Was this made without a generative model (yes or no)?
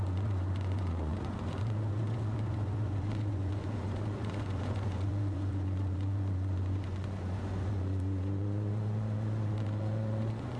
no